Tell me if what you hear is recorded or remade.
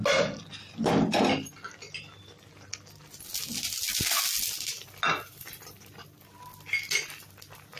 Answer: recorded